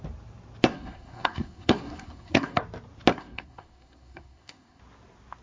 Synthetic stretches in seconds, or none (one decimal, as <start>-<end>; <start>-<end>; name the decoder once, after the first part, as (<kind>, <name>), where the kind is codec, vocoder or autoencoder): 0.7-2.6 (codec, SNAC); 3.1-4.8